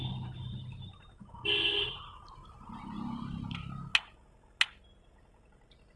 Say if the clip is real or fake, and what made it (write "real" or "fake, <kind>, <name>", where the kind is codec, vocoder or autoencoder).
real